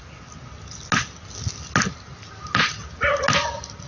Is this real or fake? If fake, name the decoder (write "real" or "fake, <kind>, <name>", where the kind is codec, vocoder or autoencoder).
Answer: real